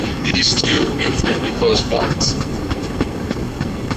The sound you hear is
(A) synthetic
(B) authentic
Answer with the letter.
A